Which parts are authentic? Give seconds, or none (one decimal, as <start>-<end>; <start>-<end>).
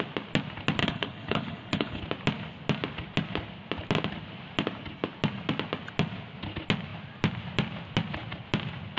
0.0-0.8; 2.0-9.0